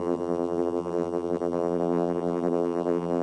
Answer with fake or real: fake